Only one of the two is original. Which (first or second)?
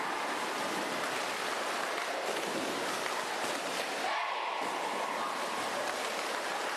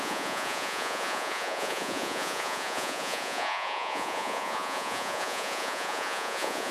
first